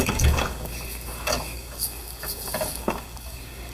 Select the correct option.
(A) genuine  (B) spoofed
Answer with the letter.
B